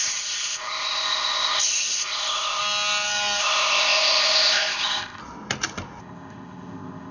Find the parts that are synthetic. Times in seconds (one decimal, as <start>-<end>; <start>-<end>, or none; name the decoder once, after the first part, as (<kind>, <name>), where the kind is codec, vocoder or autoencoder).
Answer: 0.0-2.6 (codec, ZipCodec); 3.4-5.2; 6.0-7.1